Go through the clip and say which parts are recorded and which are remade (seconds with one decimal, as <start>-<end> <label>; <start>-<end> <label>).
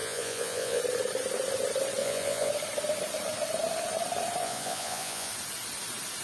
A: 0.0-0.8 remade; 0.8-2.0 recorded; 2.0-2.5 remade; 2.5-4.4 recorded; 4.4-5.3 remade; 5.3-6.2 recorded